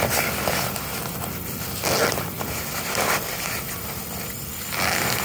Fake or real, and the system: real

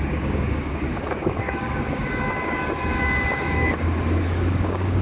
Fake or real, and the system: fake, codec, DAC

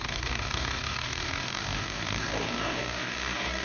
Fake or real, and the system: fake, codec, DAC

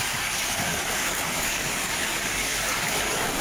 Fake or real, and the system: fake, codec, DAC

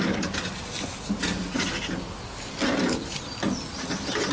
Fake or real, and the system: real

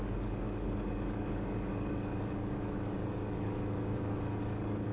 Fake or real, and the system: fake, codec, DAC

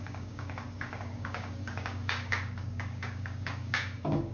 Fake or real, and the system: fake, codec, DAC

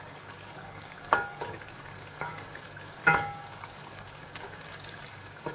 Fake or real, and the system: fake, codec, DAC